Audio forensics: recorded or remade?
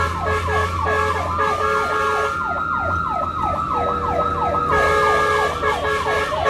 recorded